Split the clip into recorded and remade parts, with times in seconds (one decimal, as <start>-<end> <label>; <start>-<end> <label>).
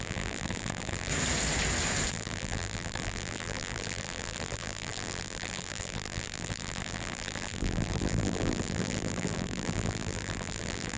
0.0-1.1 remade; 1.1-2.1 recorded; 2.1-11.0 remade